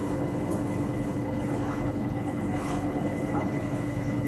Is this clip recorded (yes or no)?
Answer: no